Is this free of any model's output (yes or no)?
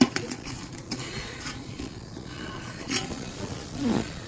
no